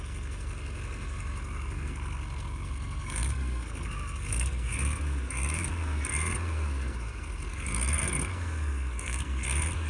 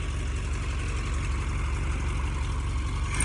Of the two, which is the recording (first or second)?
second